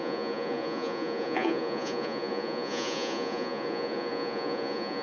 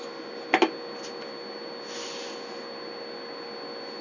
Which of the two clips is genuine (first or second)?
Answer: second